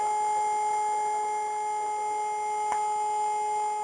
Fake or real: real